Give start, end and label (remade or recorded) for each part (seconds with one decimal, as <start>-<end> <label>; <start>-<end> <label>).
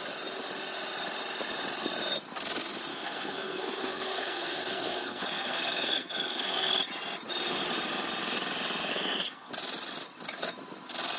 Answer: 0.0-2.9 recorded; 2.9-6.7 remade; 6.7-8.9 recorded; 8.9-9.5 remade; 9.5-11.2 recorded